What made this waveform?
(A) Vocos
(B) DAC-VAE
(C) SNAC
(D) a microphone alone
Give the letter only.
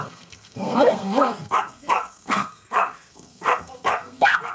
C